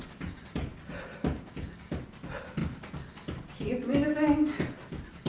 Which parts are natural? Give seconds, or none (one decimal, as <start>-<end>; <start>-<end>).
0.0-5.3